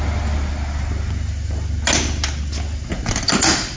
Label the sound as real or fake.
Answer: real